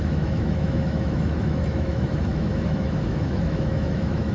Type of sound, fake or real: fake